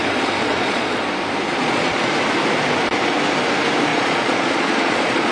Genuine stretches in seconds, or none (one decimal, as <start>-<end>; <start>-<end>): 0.0-0.4; 1.0-1.5; 2.1-3.9